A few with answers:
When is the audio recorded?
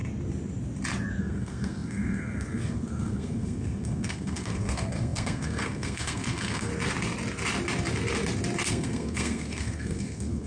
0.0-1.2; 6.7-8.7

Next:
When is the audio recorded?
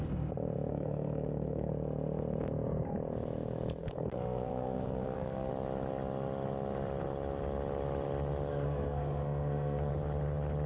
0.0-0.7; 1.7-3.8; 5.5-8.5; 9.9-10.7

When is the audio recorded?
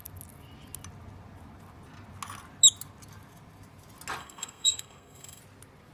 0.0-4.2; 5.4-5.9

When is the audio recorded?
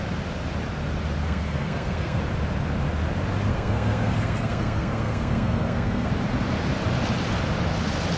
0.0-1.2; 2.2-3.5; 6.1-8.2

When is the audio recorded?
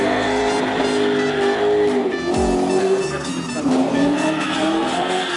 0.4-2.8; 3.3-3.9